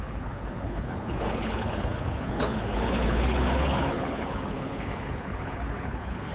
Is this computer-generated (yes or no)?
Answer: yes